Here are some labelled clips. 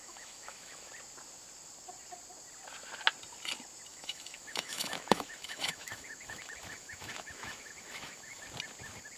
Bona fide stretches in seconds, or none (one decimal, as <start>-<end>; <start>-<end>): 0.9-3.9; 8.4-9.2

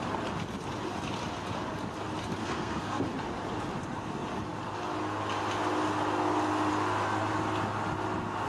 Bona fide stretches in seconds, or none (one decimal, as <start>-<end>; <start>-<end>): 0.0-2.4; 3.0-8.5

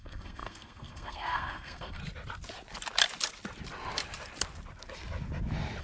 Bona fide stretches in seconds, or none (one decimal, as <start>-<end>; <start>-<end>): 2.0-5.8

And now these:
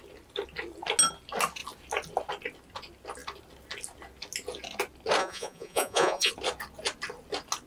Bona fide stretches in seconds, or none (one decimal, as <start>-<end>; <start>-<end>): 0.0-5.2; 6.3-7.7